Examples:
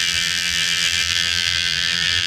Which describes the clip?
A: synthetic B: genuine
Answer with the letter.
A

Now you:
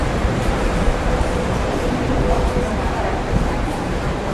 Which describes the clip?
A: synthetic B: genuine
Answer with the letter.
A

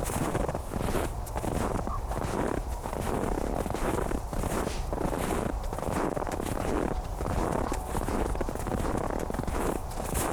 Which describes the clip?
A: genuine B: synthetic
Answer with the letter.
A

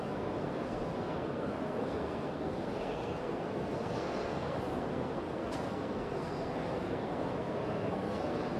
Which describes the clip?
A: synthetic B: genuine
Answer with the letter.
A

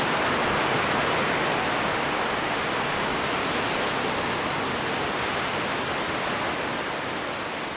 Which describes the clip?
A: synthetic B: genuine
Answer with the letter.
B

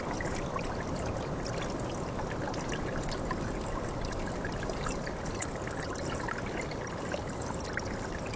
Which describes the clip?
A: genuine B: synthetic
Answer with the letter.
A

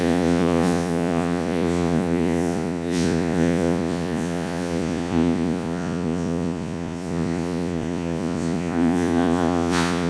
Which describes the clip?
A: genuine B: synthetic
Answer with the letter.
B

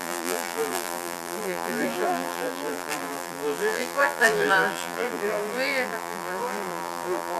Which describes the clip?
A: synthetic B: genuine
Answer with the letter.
A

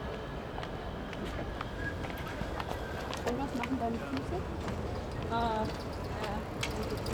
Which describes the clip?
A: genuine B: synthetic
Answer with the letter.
A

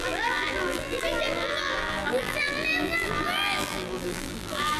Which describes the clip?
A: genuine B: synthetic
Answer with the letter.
B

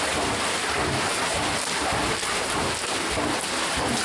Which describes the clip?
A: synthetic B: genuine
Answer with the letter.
B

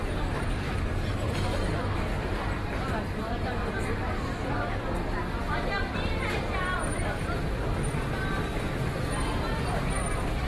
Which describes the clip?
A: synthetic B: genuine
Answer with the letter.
A